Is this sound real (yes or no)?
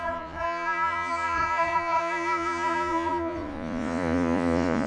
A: no